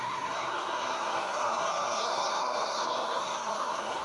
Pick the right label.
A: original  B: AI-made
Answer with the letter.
B